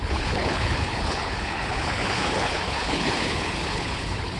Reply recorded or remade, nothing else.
remade